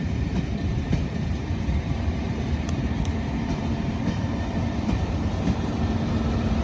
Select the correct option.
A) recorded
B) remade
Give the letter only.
B